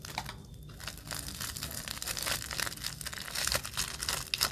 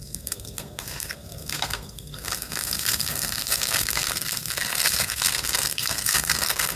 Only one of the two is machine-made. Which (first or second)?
second